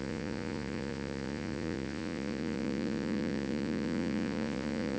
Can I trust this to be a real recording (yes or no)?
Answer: no